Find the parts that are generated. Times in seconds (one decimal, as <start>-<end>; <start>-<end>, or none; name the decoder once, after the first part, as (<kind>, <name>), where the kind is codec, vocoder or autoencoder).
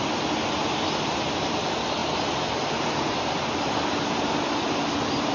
none